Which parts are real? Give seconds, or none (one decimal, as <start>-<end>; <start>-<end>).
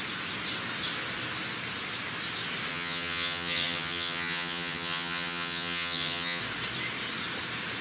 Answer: 0.0-2.7; 6.4-7.8